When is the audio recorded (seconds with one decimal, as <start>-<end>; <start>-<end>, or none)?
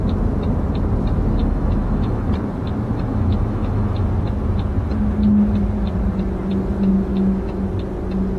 0.0-1.4; 2.3-3.1; 4.1-7.1; 7.7-8.4